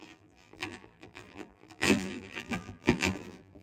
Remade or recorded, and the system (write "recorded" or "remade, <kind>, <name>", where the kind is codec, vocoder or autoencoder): remade, vocoder, BigVGAN v2